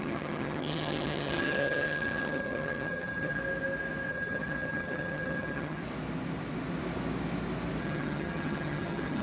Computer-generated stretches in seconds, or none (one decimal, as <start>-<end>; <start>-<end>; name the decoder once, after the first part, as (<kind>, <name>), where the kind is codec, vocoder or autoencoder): 0.0-3.4 (vocoder, HiFi-GAN); 4.1-5.8; 7.8-9.2